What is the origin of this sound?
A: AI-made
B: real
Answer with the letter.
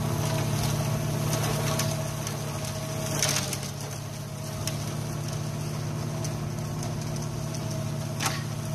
B